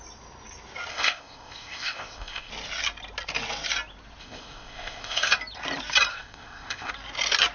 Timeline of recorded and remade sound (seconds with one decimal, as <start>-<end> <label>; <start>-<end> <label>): 0.0-0.9 recorded; 0.9-2.5 remade; 2.5-4.2 recorded; 4.2-5.3 remade; 5.3-6.1 recorded; 6.1-6.9 remade; 6.9-7.5 recorded